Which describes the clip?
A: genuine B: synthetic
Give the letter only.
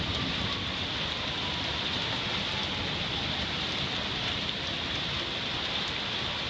A